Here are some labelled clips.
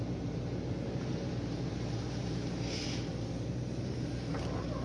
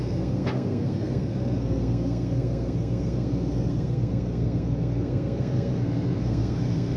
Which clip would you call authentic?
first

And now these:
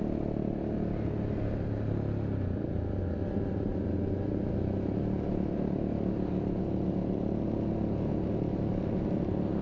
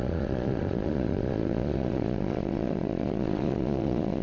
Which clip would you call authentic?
first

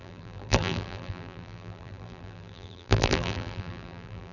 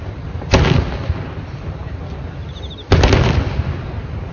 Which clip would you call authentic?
second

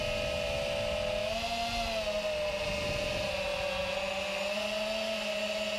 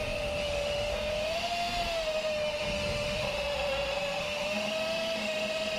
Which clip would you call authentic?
first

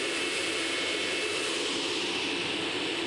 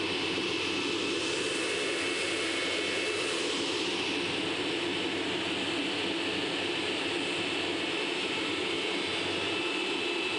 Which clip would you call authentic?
second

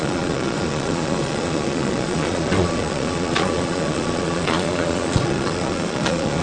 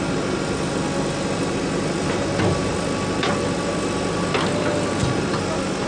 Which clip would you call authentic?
second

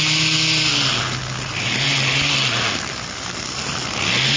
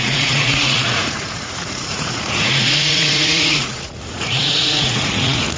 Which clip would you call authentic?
first